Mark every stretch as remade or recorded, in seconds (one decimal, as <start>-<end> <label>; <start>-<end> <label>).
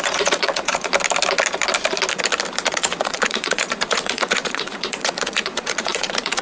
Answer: 0.0-0.9 remade; 0.9-2.7 recorded; 2.7-6.4 remade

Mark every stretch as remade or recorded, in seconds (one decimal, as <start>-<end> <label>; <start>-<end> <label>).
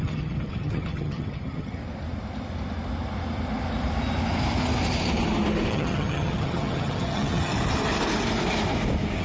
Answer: 0.0-1.8 remade; 1.8-5.7 recorded; 5.7-7.5 remade; 7.5-9.2 recorded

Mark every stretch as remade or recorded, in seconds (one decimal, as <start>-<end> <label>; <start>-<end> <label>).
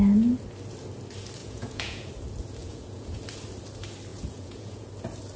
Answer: 0.0-1.4 recorded; 1.4-2.1 remade; 2.1-2.6 recorded; 2.6-3.2 remade; 3.2-4.1 recorded; 4.1-4.9 remade; 4.9-5.4 recorded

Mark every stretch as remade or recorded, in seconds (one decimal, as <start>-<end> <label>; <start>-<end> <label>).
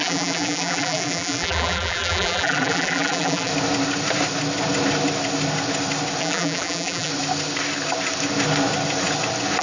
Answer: 0.0-3.5 remade; 3.5-6.2 recorded; 6.2-7.1 remade; 7.1-9.6 recorded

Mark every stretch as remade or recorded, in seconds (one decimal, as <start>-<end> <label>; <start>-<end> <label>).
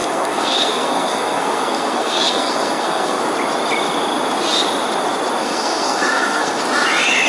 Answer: 0.0-3.2 remade; 3.2-5.4 recorded; 5.4-6.6 remade; 6.6-7.3 recorded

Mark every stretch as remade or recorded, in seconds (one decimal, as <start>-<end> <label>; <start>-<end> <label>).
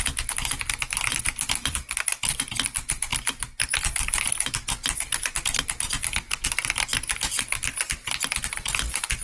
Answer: 0.0-9.2 recorded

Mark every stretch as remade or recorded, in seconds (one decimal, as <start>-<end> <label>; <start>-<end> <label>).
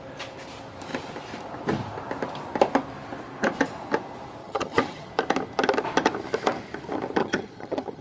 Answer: 0.0-4.4 recorded; 4.4-5.1 remade; 5.1-7.2 recorded; 7.2-8.0 remade